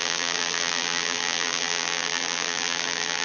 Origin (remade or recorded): remade